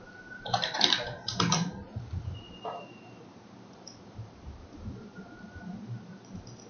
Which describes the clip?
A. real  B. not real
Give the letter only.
B